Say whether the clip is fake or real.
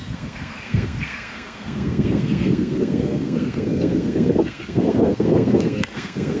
fake